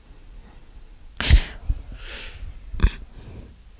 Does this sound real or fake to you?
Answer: real